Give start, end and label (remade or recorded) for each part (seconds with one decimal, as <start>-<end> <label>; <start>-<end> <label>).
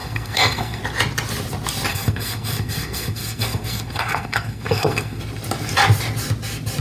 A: 0.0-0.8 remade; 0.8-1.9 recorded; 1.9-5.2 remade; 5.2-6.8 recorded